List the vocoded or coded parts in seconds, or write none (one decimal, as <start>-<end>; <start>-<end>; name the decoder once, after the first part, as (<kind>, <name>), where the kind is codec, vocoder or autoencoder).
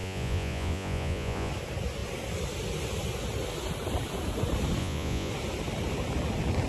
0.0-1.5 (vocoder, Vocos); 4.8-5.3